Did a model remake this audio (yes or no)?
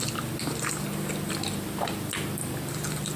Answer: no